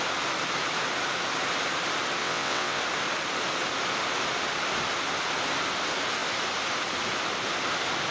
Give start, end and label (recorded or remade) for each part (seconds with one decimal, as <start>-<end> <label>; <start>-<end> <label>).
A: 0.0-2.2 recorded; 2.2-2.8 remade; 2.8-8.1 recorded